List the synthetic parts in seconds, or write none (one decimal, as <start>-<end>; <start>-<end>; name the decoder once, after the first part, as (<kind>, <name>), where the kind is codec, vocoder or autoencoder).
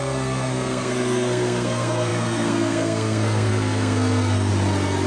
0.0-4.5 (codec, SNAC)